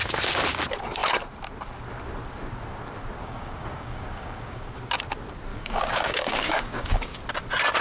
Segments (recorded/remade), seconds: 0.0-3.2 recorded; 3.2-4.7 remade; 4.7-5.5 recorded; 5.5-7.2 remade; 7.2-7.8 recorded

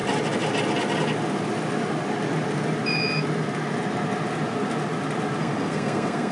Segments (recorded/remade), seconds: 0.0-5.4 recorded; 5.4-6.3 remade

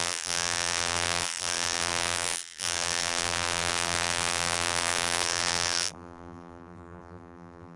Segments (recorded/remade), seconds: 0.0-7.8 remade

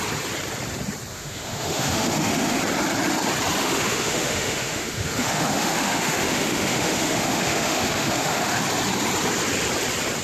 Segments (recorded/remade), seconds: 0.0-1.1 recorded; 1.1-2.6 remade; 2.6-3.6 recorded; 3.6-8.6 remade; 8.6-10.2 recorded

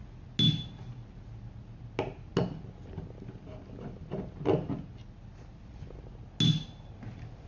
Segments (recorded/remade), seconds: 0.0-7.5 recorded

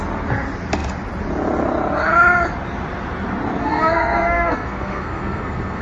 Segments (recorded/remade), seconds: 0.0-3.6 recorded; 3.6-5.8 remade

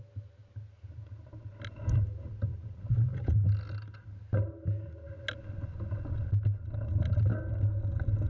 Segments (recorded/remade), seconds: 0.0-8.3 recorded

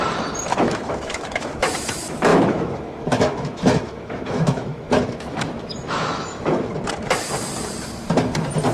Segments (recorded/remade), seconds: 0.0-0.5 recorded; 0.5-1.7 remade; 1.7-2.3 recorded; 2.3-6.7 remade; 6.7-8.7 recorded